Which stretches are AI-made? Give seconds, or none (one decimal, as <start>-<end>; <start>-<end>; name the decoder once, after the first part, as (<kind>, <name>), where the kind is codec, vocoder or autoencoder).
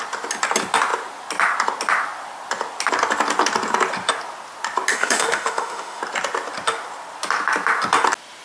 4.9-6.0 (autoencoder, DAC-VAE)